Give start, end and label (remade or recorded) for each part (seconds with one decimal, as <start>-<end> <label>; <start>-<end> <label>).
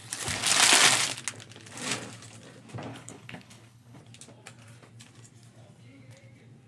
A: 0.0-2.9 recorded; 2.9-4.0 remade; 4.0-6.7 recorded